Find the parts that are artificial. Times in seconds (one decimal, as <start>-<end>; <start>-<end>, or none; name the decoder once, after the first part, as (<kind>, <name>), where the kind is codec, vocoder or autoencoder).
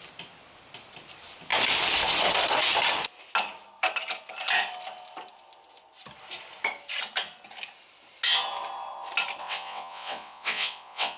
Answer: 9.4-11.2 (vocoder, WaveNeXt)